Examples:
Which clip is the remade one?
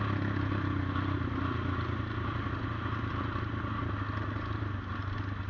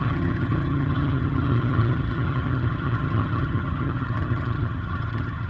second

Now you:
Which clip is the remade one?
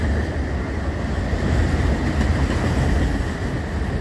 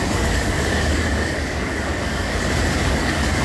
second